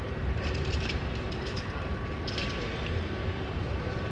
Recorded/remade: remade